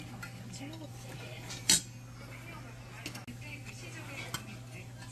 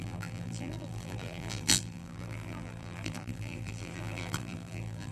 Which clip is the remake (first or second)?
second